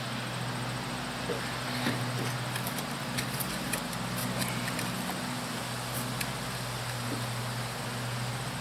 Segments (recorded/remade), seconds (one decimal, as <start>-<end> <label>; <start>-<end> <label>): 0.0-8.6 recorded